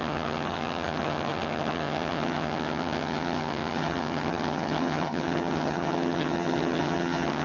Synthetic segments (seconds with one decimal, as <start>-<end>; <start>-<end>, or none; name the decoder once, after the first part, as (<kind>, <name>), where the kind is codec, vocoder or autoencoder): 0.0-7.4 (vocoder, HiFi-GAN)